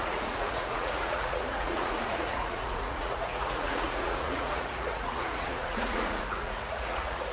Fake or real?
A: fake